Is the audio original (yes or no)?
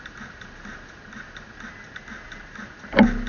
yes